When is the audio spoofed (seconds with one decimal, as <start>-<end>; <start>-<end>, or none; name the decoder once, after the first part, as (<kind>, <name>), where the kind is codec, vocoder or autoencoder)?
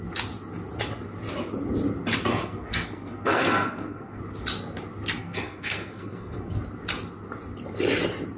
2.3-4.2 (codec, SNAC); 5.2-6.6